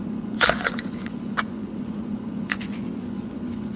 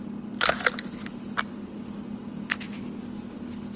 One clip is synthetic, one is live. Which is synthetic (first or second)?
first